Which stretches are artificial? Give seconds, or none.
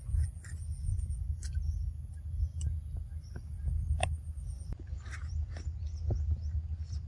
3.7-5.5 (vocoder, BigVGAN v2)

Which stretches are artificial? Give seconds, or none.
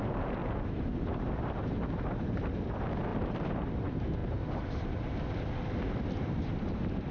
0.4-2.4 (vocoder, BigVGAN v2); 3.1-3.7; 4.2-5.1